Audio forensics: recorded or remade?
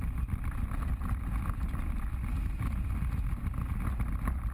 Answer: recorded